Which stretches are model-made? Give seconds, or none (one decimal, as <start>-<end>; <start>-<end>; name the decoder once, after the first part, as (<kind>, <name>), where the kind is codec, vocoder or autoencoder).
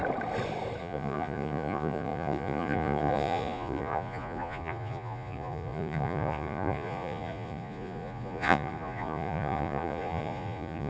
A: 0.8-10.9 (vocoder, Vocos)